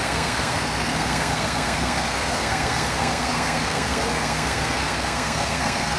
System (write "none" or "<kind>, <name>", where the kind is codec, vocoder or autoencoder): codec, SNAC